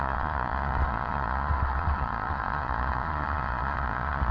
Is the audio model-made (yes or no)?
yes